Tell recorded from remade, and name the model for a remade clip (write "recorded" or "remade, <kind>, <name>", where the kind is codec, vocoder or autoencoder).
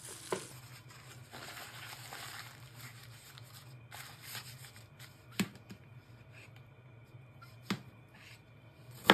recorded